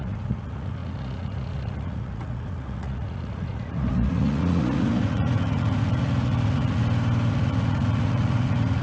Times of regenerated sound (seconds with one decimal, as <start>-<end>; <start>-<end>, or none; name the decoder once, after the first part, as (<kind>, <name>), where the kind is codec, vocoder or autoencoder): 0.0-6.8 (vocoder, Vocos); 7.3-8.8